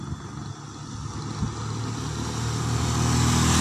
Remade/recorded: recorded